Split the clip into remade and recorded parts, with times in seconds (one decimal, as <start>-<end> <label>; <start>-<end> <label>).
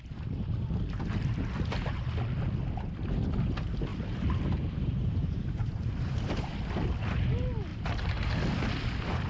0.0-3.9 recorded; 3.9-6.5 remade; 6.5-7.7 recorded; 7.7-8.3 remade; 8.3-9.3 recorded